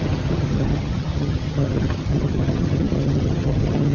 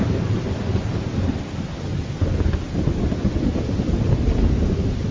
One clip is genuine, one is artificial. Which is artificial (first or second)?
first